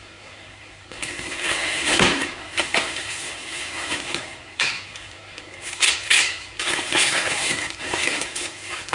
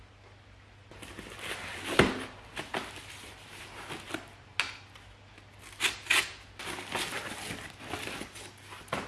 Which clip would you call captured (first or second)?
second